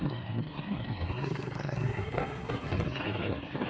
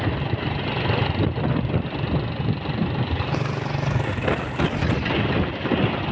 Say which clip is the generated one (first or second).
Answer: first